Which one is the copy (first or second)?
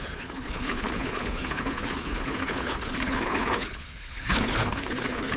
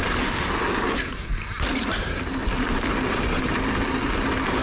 first